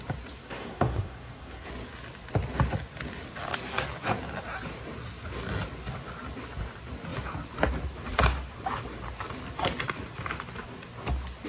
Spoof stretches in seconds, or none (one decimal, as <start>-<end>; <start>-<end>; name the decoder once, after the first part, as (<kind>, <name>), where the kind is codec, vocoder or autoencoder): 0.4-1.7 (codec, SNAC)